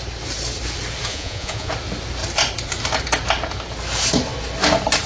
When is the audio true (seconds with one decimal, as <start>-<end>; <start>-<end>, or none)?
0.0-1.1; 1.7-5.1